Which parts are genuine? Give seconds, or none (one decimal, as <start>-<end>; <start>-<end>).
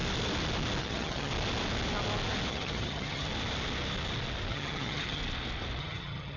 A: 0.0-0.8; 1.3-2.5; 3.3-4.5; 5.2-5.8